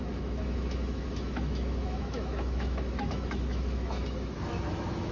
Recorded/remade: remade